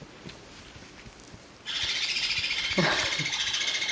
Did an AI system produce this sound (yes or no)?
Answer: no